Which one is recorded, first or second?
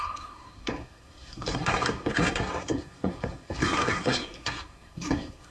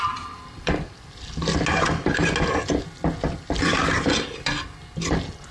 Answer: second